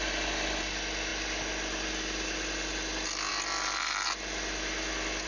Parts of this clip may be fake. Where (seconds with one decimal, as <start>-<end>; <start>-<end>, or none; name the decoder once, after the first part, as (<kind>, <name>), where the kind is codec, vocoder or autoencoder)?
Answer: none